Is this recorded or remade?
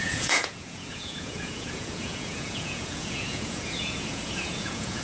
remade